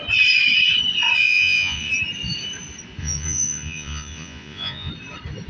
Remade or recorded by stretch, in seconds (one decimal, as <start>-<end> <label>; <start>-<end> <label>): 0.0-1.2 recorded; 1.2-1.9 remade; 1.9-3.0 recorded; 3.0-4.9 remade; 4.9-5.5 recorded